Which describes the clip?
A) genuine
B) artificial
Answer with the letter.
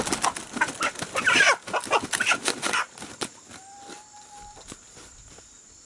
A